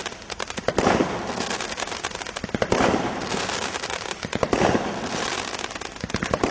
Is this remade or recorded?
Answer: recorded